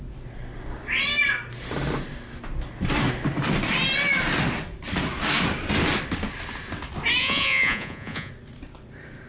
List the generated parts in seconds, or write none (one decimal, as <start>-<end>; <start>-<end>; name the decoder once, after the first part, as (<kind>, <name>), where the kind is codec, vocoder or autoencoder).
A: 7.2-8.3 (vocoder, Vocos)